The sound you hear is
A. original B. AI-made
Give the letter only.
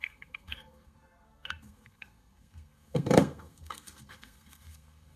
B